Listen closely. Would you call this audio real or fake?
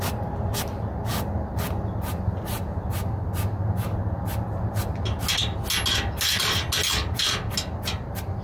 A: real